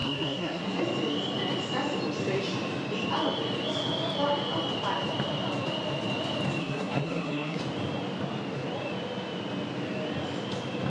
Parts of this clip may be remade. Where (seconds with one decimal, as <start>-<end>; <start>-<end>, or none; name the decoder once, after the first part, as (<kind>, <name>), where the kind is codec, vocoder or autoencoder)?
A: 0.0-0.8 (codec, SNAC); 6.6-7.6